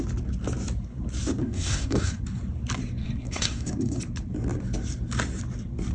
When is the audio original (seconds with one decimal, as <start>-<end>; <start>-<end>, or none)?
0.0-1.4; 2.2-3.0; 4.0-5.9